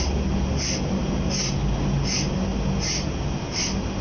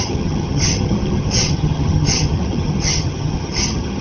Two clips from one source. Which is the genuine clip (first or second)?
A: first